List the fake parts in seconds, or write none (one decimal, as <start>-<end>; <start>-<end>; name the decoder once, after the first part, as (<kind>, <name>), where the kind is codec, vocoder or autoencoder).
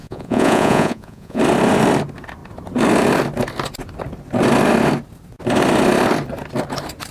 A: 0.0-1.4 (vocoder, Vocos)